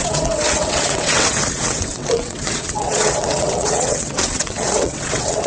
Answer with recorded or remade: remade